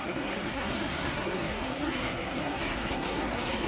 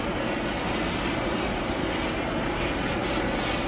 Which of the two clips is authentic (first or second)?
second